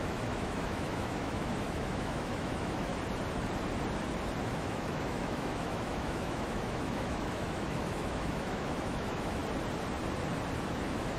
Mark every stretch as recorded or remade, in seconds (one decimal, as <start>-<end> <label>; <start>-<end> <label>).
0.0-2.9 remade; 2.9-4.4 recorded; 4.4-9.4 remade; 9.4-10.6 recorded; 10.6-11.2 remade